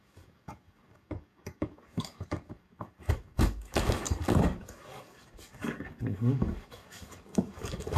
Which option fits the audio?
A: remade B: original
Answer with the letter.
A